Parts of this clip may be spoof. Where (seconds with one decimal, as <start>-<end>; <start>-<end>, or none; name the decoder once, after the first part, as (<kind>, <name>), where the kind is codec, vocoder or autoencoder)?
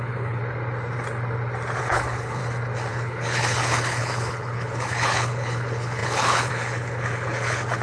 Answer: 0.0-0.4 (codec, HILCodec); 1.8-2.4; 2.9-7.8